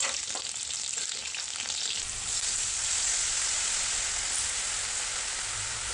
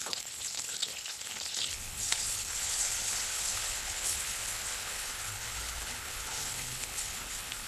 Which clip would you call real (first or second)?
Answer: first